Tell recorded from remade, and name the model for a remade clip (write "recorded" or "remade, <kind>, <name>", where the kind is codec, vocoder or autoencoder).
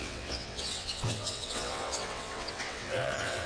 remade, vocoder, WaveNeXt